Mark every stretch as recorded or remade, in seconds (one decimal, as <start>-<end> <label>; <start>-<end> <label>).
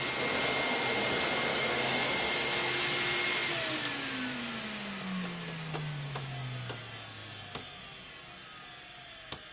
0.0-1.5 recorded; 1.5-2.1 remade; 2.1-9.5 recorded